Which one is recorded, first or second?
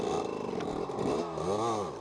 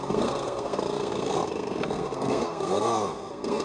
first